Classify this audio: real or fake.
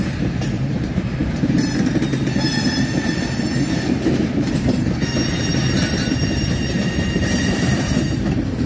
fake